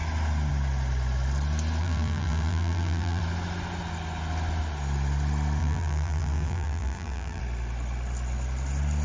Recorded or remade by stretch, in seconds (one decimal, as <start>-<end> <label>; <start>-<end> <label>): 0.0-1.8 recorded; 1.8-3.2 remade; 3.2-5.6 recorded; 5.6-7.4 remade; 7.4-9.0 recorded